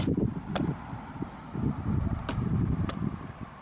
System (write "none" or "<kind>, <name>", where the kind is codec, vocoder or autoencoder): vocoder, BigVGAN v2